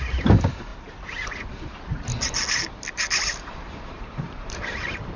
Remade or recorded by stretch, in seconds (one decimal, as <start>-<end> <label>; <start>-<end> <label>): 0.0-0.7 remade; 0.7-3.2 recorded; 3.2-5.2 remade